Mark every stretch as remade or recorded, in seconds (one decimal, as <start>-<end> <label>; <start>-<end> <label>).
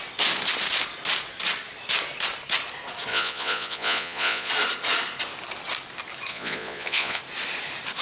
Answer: 0.0-3.1 recorded; 3.1-4.5 remade; 4.5-6.3 recorded; 6.3-7.2 remade; 7.2-8.0 recorded